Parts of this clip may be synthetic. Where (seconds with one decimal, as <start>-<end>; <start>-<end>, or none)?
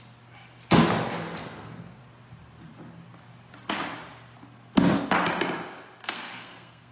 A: 1.4-2.0; 6.0-6.9